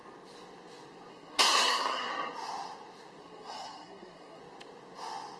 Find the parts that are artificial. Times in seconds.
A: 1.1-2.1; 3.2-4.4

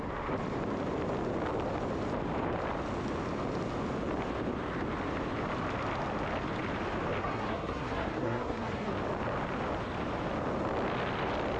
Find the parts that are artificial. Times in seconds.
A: 7.2-8.9

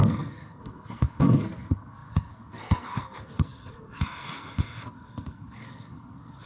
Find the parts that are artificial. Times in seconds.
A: 0.0-6.5